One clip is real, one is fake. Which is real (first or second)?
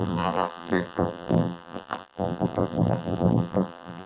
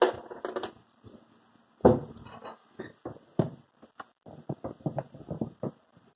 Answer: second